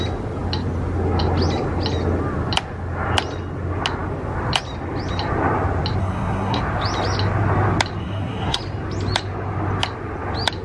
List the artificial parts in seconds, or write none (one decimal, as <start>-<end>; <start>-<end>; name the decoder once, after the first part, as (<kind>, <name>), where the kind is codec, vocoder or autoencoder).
6.0-6.6 (codec, SNAC); 8.0-8.6